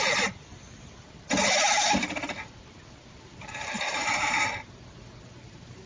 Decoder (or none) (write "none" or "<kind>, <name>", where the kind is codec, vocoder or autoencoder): none